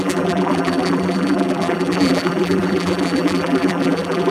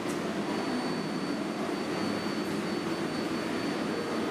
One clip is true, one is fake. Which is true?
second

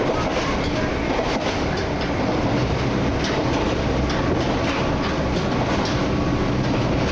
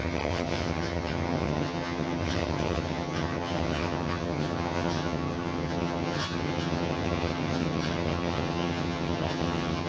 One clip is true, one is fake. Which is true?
first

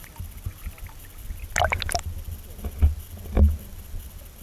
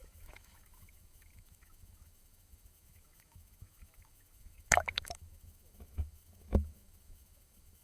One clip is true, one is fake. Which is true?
first